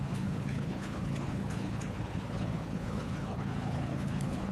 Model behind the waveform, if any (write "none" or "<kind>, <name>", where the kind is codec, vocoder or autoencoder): codec, HILCodec